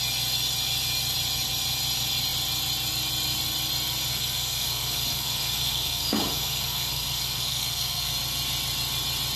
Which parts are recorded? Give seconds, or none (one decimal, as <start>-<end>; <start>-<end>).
0.0-4.1; 8.1-9.4